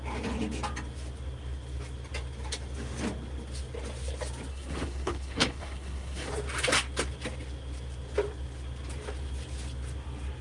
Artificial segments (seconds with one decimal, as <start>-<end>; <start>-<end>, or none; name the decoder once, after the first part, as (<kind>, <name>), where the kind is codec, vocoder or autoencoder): 4.5-6.3 (codec, SNAC)